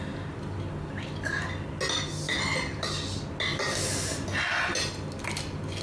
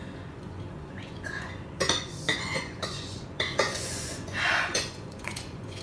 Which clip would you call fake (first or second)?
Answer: second